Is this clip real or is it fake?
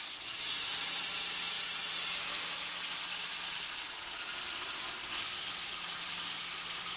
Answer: real